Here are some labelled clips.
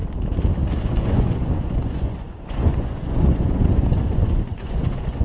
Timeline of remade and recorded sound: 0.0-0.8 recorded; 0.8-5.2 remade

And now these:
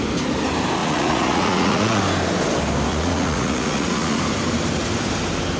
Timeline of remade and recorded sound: 0.0-0.8 recorded; 0.8-2.0 remade; 2.0-2.9 recorded; 2.9-4.2 remade; 4.2-5.6 recorded

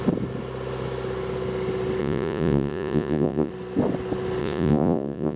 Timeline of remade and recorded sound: 0.0-2.0 recorded; 2.0-3.5 remade; 3.5-4.4 recorded; 4.4-5.4 remade

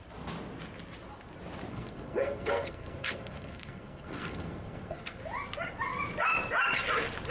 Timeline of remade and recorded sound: 0.0-1.7 recorded; 1.7-5.2 remade; 5.2-7.3 recorded

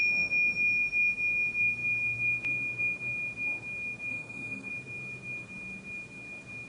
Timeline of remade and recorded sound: 0.0-4.1 recorded; 4.1-4.7 remade; 4.7-6.7 recorded

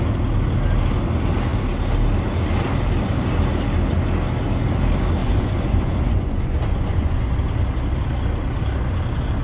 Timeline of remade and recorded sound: 0.0-5.2 recorded; 5.2-7.4 remade; 7.4-9.4 recorded